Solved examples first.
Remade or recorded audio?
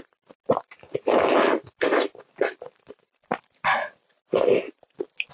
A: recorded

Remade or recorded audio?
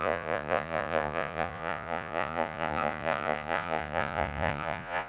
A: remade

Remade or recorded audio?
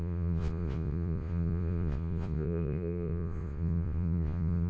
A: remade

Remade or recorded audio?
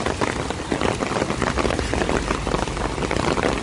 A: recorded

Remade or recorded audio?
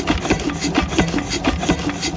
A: recorded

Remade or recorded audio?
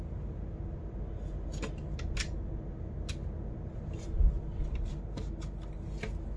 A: recorded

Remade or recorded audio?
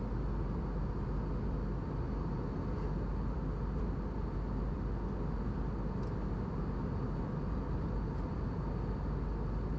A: recorded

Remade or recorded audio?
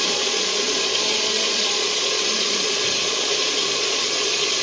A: remade